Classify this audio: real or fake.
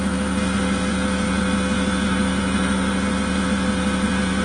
real